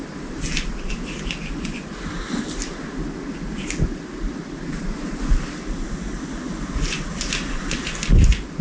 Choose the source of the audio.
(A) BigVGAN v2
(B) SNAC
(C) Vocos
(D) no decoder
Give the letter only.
D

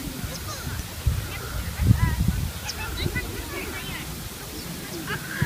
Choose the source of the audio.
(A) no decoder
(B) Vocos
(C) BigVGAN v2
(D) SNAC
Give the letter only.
A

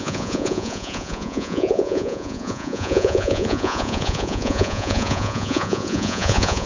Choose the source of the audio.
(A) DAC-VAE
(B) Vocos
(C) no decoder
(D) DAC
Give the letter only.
B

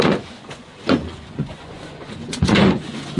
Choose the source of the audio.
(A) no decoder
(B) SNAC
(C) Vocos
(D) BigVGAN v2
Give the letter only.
C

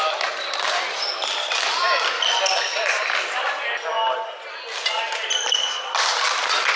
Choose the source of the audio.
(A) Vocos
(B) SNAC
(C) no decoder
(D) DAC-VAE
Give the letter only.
C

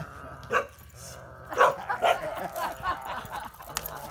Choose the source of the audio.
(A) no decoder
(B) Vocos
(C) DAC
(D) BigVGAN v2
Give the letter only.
A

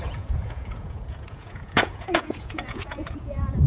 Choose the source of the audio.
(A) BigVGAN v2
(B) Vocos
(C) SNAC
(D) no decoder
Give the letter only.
B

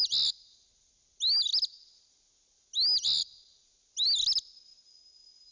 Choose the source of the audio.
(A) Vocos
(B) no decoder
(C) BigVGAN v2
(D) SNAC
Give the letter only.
B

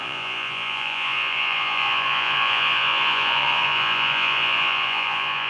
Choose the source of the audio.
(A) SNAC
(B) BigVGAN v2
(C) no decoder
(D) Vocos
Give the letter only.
D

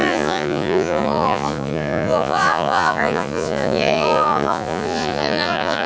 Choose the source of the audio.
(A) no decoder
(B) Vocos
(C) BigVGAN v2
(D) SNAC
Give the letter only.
B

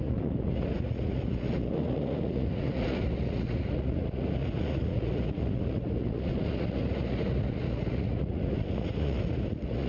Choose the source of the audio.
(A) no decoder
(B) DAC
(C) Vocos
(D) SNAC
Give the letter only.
C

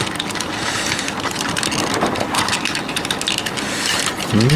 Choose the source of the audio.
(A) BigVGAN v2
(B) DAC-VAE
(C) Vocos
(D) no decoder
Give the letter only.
D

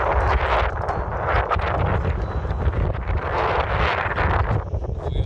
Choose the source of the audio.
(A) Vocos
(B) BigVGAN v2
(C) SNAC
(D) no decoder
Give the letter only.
D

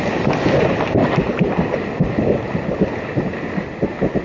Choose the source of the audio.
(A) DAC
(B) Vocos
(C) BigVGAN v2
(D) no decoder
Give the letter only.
D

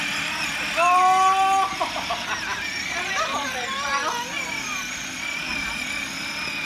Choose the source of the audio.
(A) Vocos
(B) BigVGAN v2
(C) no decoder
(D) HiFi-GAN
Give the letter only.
C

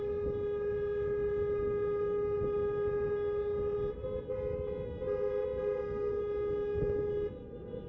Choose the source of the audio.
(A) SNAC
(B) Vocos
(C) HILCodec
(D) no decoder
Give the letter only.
D